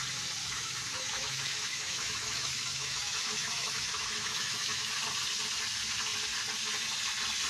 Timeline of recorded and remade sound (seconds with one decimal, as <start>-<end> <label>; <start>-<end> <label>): 0.0-0.4 recorded; 0.4-4.9 remade; 4.9-7.5 recorded